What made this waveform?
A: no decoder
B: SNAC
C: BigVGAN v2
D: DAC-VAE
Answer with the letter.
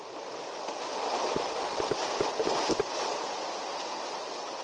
A